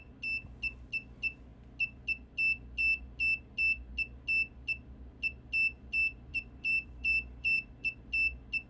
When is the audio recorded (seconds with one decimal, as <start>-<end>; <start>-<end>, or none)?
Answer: 0.0-6.3; 8.0-8.7